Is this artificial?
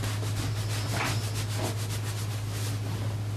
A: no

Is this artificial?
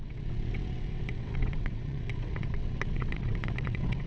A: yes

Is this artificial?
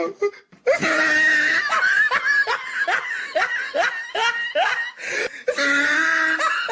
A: no